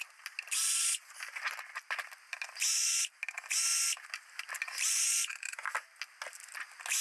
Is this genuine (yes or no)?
yes